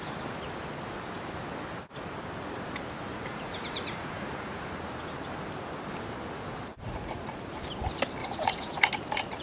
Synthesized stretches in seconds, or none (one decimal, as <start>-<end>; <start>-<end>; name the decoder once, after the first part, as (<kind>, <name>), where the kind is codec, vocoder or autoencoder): 3.1-4.7 (vocoder, Vocos); 6.7-7.4; 8.2-8.9